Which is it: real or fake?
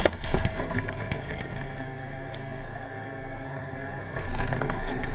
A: fake